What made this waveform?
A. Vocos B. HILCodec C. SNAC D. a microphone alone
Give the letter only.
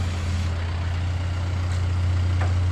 D